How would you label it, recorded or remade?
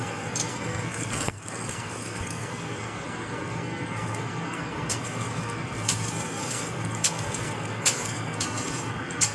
remade